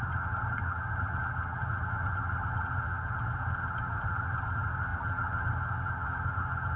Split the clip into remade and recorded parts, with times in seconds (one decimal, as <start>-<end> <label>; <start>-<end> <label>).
0.0-6.8 remade

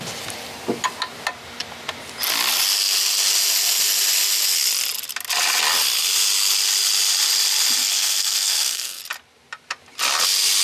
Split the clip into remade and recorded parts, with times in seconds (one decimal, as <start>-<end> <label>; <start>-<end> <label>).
0.0-7.8 recorded; 7.8-9.0 remade; 9.0-10.6 recorded

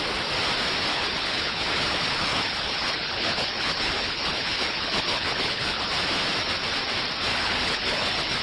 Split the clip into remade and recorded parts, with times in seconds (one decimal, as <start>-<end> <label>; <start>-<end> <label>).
0.0-0.9 recorded; 0.9-5.9 remade; 5.9-7.3 recorded; 7.3-8.4 remade

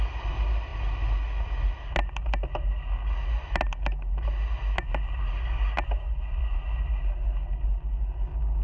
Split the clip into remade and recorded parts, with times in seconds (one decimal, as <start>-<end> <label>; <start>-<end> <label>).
0.0-8.6 recorded

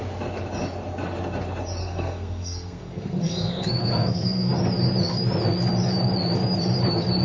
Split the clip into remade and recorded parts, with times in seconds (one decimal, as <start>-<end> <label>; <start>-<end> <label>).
0.0-1.8 recorded; 1.8-4.5 remade; 4.5-7.2 recorded